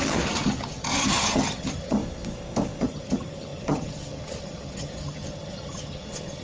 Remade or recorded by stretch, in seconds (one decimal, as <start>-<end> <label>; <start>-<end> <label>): 0.0-2.0 remade; 2.0-2.8 recorded; 2.8-6.4 remade

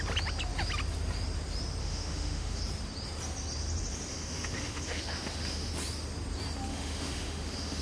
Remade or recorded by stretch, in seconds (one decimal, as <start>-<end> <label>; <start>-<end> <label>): 0.0-1.8 recorded; 1.8-2.6 remade; 2.6-4.1 recorded; 4.1-5.7 remade; 5.7-6.7 recorded; 6.7-7.8 remade

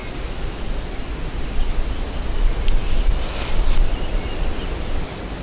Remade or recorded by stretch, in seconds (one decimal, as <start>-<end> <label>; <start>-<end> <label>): 0.0-5.4 recorded

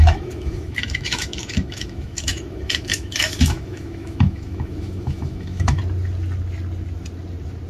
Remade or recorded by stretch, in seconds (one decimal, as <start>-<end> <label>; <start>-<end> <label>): 0.0-5.8 remade; 5.8-7.7 recorded

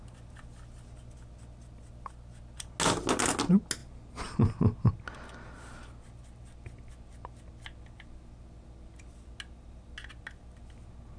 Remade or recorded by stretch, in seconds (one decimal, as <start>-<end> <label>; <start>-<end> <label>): 0.0-11.2 recorded

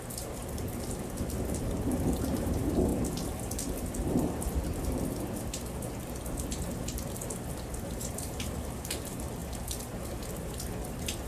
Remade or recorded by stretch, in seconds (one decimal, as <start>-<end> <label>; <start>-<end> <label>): 0.0-0.4 remade; 0.4-2.2 recorded; 2.2-2.9 remade; 2.9-7.9 recorded; 7.9-9.4 remade; 9.4-10.9 recorded; 10.9-11.3 remade